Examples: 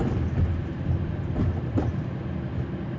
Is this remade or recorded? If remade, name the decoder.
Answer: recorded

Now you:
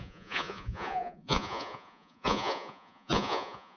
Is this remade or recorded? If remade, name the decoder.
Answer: remade, vocoder, Vocos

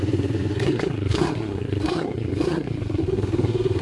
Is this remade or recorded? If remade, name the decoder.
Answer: remade, codec, SNAC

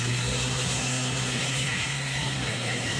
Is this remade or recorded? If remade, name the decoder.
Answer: remade, codec, SNAC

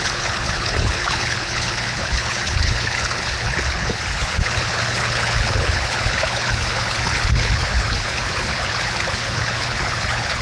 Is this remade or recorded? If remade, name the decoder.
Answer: remade, codec, HILCodec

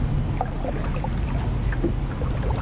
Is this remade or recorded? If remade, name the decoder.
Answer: recorded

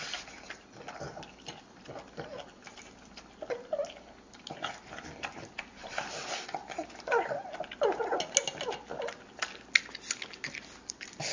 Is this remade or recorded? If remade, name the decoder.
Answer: recorded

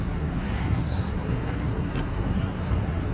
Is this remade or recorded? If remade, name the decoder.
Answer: remade, codec, SNAC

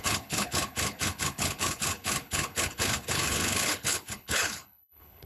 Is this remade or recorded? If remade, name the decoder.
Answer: remade, codec, HILCodec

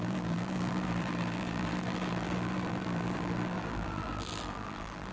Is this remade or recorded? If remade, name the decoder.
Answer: remade, vocoder, BigVGAN v2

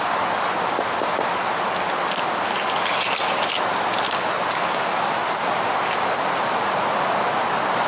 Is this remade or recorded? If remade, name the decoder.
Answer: recorded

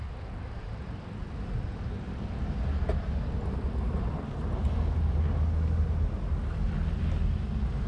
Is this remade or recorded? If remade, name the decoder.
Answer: recorded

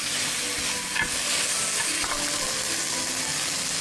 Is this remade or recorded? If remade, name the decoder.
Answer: recorded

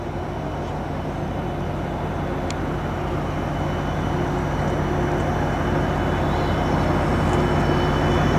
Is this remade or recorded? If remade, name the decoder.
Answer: recorded